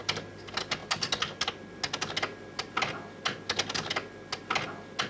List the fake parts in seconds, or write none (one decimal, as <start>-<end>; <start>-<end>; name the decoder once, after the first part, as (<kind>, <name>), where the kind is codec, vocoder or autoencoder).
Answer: none